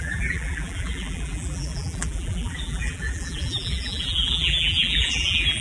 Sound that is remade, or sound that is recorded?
remade